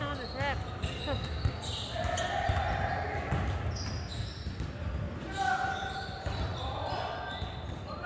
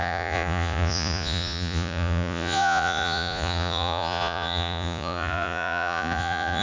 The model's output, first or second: second